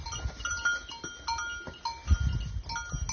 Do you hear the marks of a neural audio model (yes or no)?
no